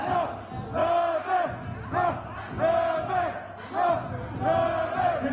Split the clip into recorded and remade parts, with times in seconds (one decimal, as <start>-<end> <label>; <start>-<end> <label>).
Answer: 0.0-5.3 recorded